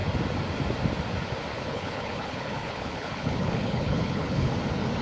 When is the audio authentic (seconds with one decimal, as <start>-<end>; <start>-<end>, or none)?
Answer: 0.0-1.5; 4.5-5.0